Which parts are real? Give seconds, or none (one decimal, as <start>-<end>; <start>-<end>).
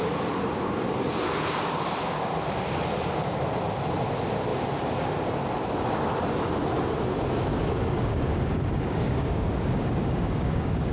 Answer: 0.0-7.5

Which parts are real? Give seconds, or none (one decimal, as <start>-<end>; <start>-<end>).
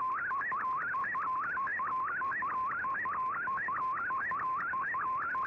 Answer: 0.0-5.5